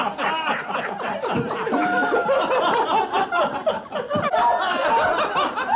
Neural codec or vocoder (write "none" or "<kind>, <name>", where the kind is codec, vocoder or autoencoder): none